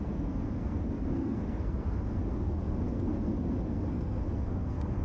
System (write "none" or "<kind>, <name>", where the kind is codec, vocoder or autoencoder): codec, SNAC